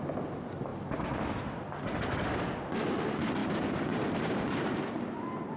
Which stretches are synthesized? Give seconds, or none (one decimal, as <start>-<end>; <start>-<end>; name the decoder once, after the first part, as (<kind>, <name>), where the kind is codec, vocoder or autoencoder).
3.4-4.9 (vocoder, BigVGAN v2)

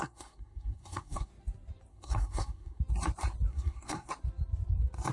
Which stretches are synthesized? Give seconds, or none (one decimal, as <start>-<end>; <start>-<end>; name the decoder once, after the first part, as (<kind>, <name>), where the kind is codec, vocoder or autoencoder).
0.0-1.3 (codec, SNAC); 1.9-2.8; 3.5-4.1